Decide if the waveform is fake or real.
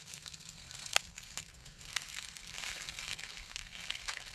fake